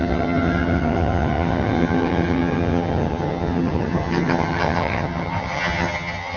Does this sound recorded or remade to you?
remade